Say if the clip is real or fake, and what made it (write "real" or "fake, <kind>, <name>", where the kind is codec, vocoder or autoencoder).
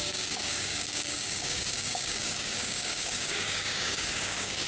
fake, codec, DAC